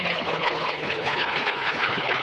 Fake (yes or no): yes